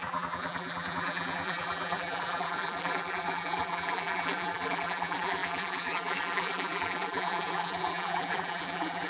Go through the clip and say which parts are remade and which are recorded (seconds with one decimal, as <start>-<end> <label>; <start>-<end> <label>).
0.0-9.1 remade